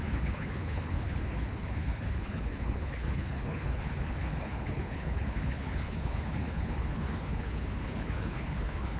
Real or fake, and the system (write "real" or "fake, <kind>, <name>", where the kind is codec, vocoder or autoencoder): fake, codec, HILCodec